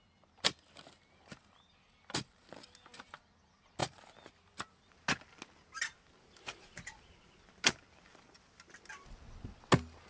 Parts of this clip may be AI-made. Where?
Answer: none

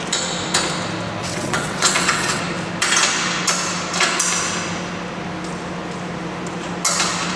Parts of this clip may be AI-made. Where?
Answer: 1.2-2.4

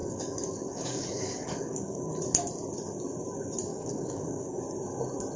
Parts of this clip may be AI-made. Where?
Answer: 0.0-2.1; 3.7-4.6

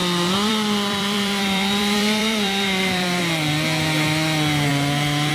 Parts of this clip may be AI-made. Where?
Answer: 0.0-3.2

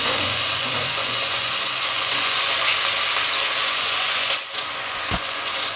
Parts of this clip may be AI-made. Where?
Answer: 0.0-2.7; 3.6-5.8